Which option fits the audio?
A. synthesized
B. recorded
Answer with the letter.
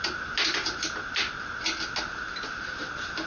B